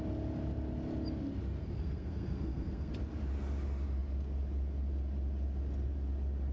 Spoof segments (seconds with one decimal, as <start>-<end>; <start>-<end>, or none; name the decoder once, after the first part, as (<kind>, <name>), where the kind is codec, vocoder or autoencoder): 1.6-2.9 (codec, SNAC)